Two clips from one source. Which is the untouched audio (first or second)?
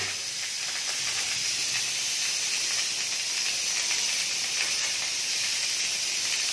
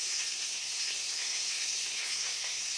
first